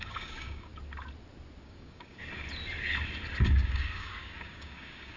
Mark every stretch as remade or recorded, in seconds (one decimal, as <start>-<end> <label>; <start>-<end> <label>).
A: 0.0-0.7 remade; 0.7-1.6 recorded; 1.6-2.2 remade; 2.2-3.4 recorded; 3.4-5.2 remade

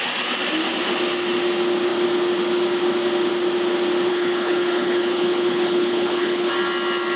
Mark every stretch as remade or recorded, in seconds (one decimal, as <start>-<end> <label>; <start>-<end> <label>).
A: 0.0-4.1 recorded; 4.1-6.5 remade; 6.5-7.2 recorded

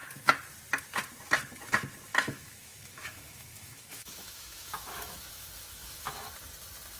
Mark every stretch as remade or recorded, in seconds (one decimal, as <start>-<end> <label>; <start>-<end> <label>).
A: 0.0-2.1 recorded; 2.1-6.3 remade; 6.3-7.0 recorded

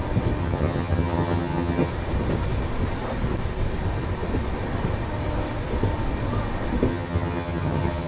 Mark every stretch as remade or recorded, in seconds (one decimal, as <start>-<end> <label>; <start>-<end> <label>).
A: 0.0-0.4 recorded; 0.4-1.9 remade; 1.9-6.9 recorded; 6.9-8.1 remade

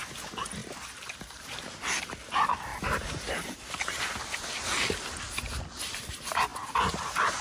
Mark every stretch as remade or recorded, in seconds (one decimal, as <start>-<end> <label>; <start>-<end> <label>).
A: 0.0-0.6 recorded; 0.6-2.0 remade; 2.0-2.7 recorded; 2.7-4.0 remade; 4.0-7.4 recorded

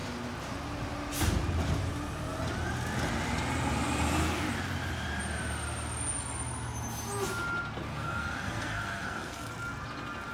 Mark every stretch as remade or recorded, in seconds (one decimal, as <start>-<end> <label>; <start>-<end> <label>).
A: 0.0-7.9 recorded; 7.9-9.5 remade; 9.5-10.3 recorded